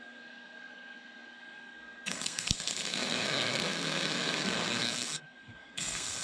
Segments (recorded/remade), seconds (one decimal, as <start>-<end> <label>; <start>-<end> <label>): 0.0-6.2 remade

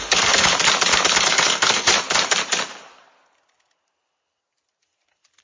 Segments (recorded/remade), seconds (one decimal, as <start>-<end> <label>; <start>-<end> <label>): 0.0-0.5 remade; 0.5-1.3 recorded; 1.3-1.9 remade; 1.9-5.4 recorded

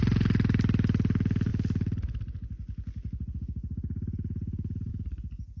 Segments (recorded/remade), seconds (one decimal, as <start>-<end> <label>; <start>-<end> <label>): 0.0-5.6 recorded

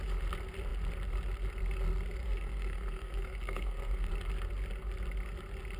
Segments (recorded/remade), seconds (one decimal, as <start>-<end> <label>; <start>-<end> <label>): 0.0-2.2 recorded; 2.2-4.1 remade; 4.1-5.8 recorded

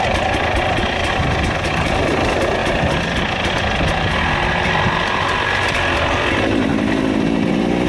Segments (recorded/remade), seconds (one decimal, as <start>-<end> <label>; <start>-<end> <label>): 0.0-7.9 recorded

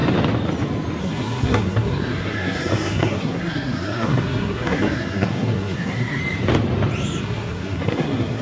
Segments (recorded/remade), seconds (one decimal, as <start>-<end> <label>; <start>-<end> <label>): 0.0-1.0 recorded; 1.0-6.2 remade; 6.2-7.2 recorded; 7.2-8.4 remade

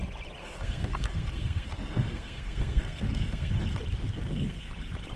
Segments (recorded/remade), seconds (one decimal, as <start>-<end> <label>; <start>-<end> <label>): 0.0-0.4 recorded; 0.4-3.5 remade; 3.5-4.0 recorded; 4.0-4.7 remade; 4.7-5.2 recorded

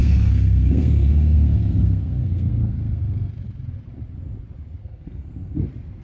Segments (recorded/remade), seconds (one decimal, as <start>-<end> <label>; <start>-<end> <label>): 0.0-3.3 remade; 3.3-4.8 recorded; 4.8-5.6 remade; 5.6-6.0 recorded